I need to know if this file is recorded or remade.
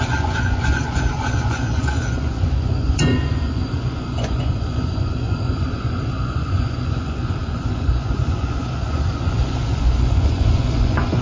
remade